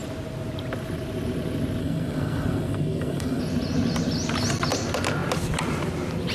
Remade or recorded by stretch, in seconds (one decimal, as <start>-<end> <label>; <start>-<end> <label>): 0.0-1.8 recorded; 1.8-3.4 remade; 3.4-6.3 recorded